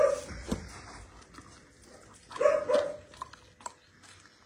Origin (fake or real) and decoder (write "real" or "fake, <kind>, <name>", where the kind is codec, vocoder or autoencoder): real